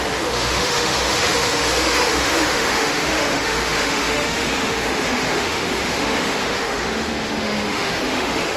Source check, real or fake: fake